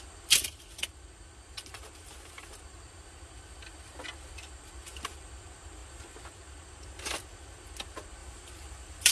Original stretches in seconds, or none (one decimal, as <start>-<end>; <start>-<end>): 0.0-1.4; 2.6-8.2